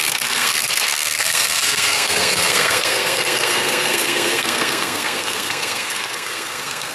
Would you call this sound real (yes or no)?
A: no